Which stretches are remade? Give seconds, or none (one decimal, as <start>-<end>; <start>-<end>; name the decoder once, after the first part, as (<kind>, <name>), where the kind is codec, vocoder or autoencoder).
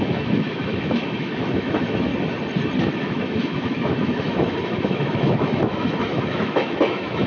0.0-2.1 (autoencoder, DAC-VAE); 2.8-7.3